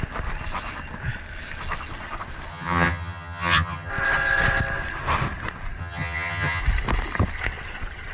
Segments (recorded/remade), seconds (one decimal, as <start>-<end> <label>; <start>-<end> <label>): 0.0-2.5 recorded; 2.5-3.9 remade; 3.9-5.8 recorded; 5.8-6.6 remade; 6.6-8.1 recorded